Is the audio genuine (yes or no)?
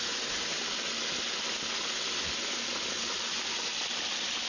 yes